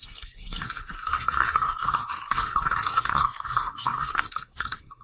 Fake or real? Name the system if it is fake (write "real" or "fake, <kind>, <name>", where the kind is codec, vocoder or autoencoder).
fake, codec, SNAC